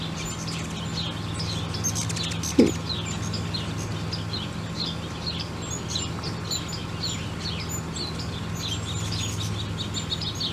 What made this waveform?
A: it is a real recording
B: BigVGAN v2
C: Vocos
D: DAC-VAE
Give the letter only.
A